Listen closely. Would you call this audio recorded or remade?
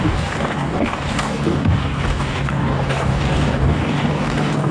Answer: remade